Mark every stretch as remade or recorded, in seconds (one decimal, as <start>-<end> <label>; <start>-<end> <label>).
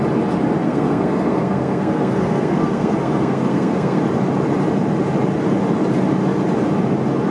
0.0-0.6 recorded; 0.6-4.0 remade; 4.0-7.3 recorded